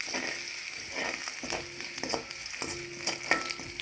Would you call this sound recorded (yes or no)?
yes